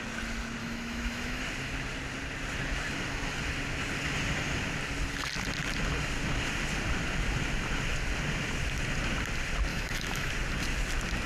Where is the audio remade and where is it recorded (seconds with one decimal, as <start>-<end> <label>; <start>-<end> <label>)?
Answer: 0.0-0.6 recorded; 0.6-1.4 remade; 1.4-9.7 recorded; 9.7-10.3 remade; 10.3-11.3 recorded